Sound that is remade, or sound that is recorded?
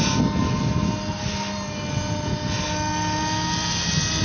recorded